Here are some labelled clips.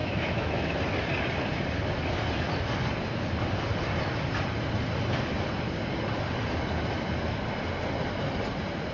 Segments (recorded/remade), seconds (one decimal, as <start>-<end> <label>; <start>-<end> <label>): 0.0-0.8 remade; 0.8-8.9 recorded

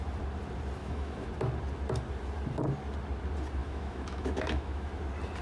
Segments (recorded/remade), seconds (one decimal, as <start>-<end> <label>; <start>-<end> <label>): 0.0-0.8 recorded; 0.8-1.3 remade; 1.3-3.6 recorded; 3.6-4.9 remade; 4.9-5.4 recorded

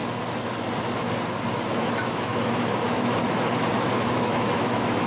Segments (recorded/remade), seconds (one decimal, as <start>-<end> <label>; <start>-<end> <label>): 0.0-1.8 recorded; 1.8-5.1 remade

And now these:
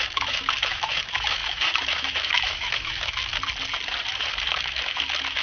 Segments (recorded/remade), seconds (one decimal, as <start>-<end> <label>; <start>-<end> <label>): 0.0-3.3 remade; 3.3-4.5 recorded; 4.5-5.4 remade

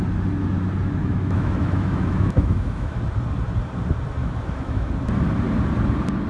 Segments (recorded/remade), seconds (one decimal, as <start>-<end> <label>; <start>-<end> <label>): 0.0-1.0 recorded; 1.0-3.0 remade; 3.0-4.2 recorded; 4.2-4.9 remade; 4.9-6.3 recorded